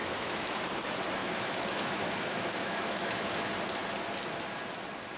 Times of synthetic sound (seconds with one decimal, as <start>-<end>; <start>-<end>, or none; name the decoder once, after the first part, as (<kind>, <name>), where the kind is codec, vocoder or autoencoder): 0.0-0.6 (autoencoder, DAC-VAE); 1.2-3.4